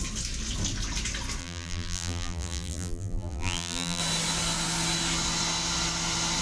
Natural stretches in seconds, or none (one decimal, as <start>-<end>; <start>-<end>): 0.0-1.4; 4.0-6.4